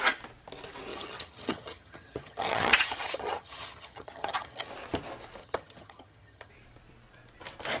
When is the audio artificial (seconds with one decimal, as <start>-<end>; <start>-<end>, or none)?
0.9-4.7; 5.4-6.5